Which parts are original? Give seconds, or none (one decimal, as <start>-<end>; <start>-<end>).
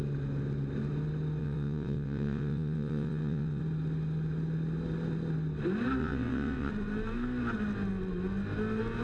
0.0-1.4; 3.6-6.0; 6.7-9.0